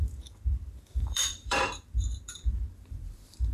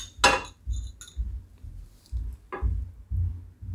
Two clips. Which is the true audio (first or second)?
second